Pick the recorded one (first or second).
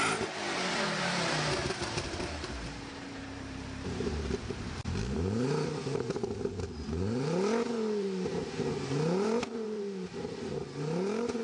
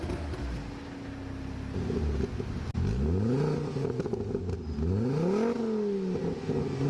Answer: second